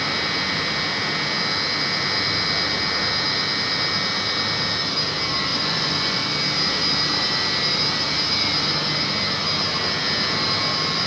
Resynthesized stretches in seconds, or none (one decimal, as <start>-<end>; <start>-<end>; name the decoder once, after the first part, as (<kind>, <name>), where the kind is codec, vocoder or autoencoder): 5.5-6.2 (vocoder, Vocos)